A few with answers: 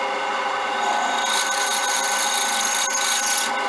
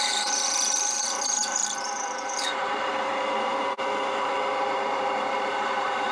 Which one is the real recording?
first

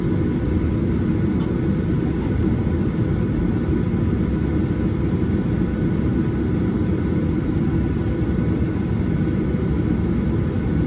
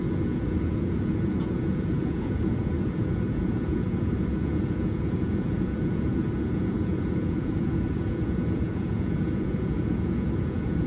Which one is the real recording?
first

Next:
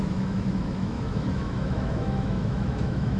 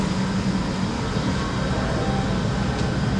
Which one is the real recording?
second